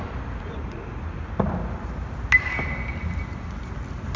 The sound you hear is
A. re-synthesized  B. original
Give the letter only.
B